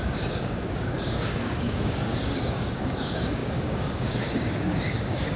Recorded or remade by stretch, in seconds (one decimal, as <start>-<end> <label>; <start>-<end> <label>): 0.0-5.4 remade